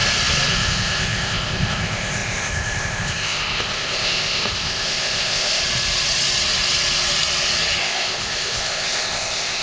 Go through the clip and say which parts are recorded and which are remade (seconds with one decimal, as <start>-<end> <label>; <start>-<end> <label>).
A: 0.0-0.5 recorded; 0.5-5.6 remade; 5.6-7.8 recorded; 7.8-9.6 remade